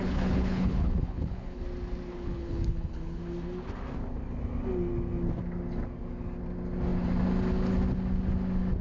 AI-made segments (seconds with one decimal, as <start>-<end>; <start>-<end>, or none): 0.0-1.6; 2.1-3.2